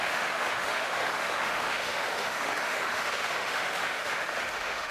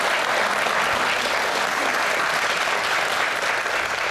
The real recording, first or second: second